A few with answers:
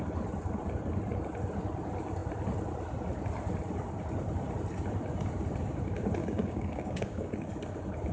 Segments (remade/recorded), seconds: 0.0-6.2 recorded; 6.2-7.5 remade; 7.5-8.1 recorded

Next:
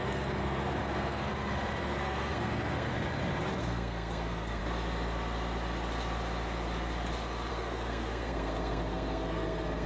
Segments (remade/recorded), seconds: 0.0-1.3 remade; 1.3-1.8 recorded; 1.8-2.9 remade; 2.9-3.6 recorded; 3.6-4.6 remade; 4.6-7.5 recorded; 7.5-9.9 remade

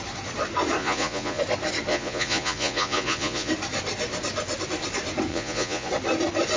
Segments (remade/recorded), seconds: 0.0-0.8 recorded; 0.8-1.4 remade; 1.4-1.9 recorded; 1.9-3.5 remade; 3.5-5.3 recorded; 5.3-5.9 remade; 5.9-6.6 recorded

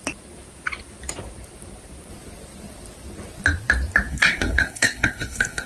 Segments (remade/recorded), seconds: 0.0-4.1 recorded; 4.1-5.7 remade

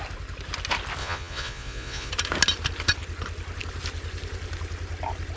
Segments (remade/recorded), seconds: 0.0-1.0 recorded; 1.0-2.1 remade; 2.1-5.4 recorded

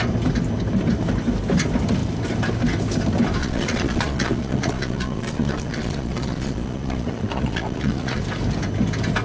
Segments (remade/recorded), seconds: 0.0-3.4 recorded; 3.4-8.2 remade; 8.2-9.2 recorded

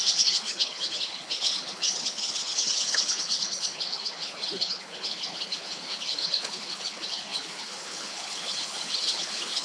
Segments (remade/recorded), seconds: 0.0-9.6 remade